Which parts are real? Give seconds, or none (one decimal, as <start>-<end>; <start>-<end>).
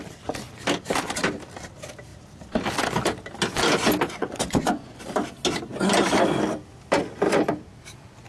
0.0-4.2; 5.1-8.3